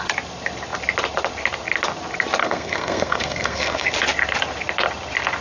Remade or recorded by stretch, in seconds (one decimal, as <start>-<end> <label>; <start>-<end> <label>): 0.0-2.4 recorded; 2.4-3.9 remade; 3.9-5.4 recorded